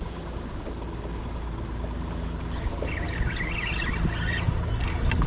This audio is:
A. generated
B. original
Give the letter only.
B